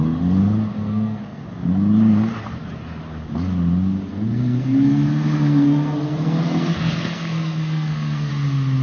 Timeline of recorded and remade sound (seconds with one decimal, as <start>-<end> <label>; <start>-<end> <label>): 0.0-0.7 recorded; 0.7-1.4 remade; 1.4-4.1 recorded; 4.1-8.3 remade; 8.3-8.8 recorded